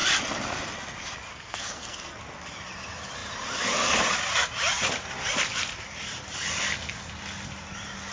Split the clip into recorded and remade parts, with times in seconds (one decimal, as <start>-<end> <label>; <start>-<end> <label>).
0.0-1.3 recorded; 1.3-2.2 remade; 2.2-8.1 recorded